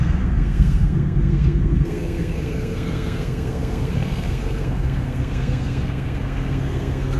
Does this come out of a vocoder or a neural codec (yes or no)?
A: yes